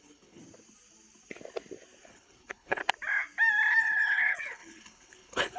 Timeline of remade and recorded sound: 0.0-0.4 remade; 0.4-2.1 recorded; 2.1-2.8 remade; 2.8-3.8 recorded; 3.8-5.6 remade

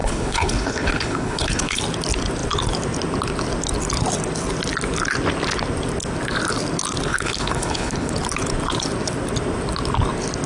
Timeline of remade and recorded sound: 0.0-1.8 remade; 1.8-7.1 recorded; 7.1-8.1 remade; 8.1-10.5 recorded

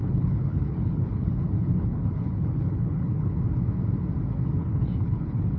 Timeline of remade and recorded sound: 0.0-3.4 remade; 3.4-4.6 recorded; 4.6-5.6 remade

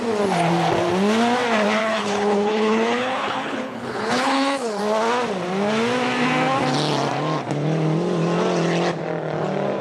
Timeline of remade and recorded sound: 0.0-1.8 recorded; 1.8-4.8 remade; 4.8-9.8 recorded